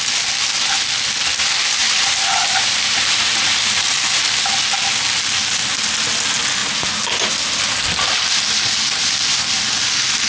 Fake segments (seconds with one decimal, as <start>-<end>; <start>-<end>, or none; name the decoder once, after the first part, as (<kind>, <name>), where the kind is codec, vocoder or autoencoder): 1.8-4.5 (vocoder, BigVGAN v2)

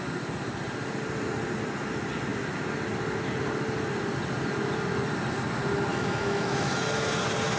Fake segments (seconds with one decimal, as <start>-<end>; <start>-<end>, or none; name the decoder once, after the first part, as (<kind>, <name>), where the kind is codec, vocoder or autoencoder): 5.9-6.8 (autoencoder, DAC-VAE)